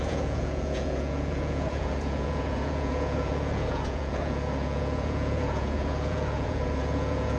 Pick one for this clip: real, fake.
fake